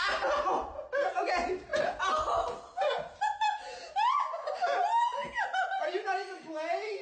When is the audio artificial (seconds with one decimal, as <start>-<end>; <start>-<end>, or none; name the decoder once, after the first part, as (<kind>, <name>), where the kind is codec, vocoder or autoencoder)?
none